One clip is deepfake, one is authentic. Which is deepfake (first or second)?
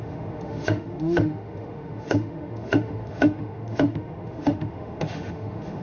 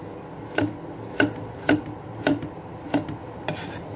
first